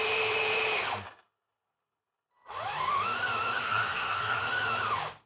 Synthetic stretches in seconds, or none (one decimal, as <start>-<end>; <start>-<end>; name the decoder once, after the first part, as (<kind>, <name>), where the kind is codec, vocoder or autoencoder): 3.6-4.4 (codec, SNAC)